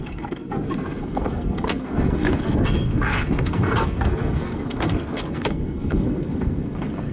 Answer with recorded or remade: remade